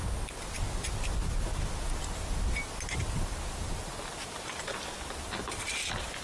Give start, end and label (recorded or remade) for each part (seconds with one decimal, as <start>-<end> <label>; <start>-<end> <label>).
0.0-6.2 recorded